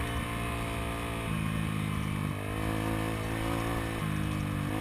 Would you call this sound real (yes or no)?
yes